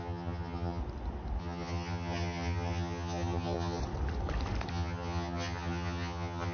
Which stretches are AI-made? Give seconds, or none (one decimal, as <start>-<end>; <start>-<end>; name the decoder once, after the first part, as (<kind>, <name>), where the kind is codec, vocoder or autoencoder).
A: 0.0-0.8 (vocoder, HiFi-GAN); 1.4-3.8; 4.7-6.5